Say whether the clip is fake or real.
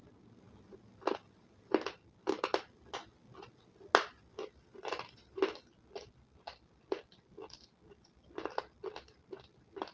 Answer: real